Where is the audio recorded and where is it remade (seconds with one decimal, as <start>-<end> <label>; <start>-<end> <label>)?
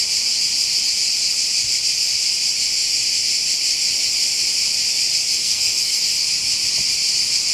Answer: 0.0-5.4 recorded; 5.4-6.0 remade; 6.0-7.5 recorded